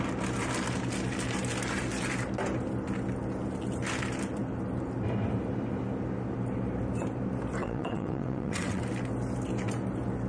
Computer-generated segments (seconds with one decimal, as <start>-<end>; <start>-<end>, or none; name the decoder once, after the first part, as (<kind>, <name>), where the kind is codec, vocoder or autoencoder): 7.6-8.8 (vocoder, WaveNeXt)